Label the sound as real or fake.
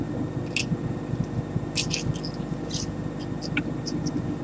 real